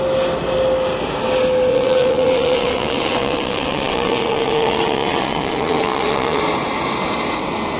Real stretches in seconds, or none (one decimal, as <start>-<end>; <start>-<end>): 0.0-1.7; 6.4-7.8